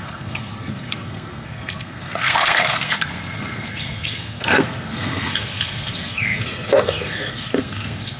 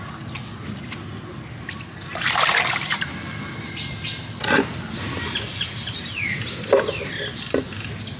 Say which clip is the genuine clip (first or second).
second